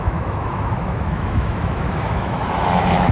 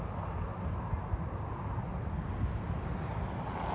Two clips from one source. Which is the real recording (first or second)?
second